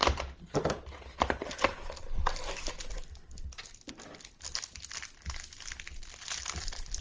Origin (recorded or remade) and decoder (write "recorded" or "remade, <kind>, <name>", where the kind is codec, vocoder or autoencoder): recorded